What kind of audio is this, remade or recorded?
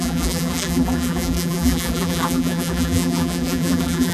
remade